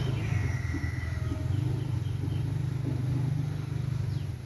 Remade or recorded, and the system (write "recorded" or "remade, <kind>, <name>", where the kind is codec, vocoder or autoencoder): recorded